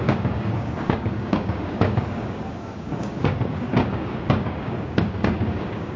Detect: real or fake fake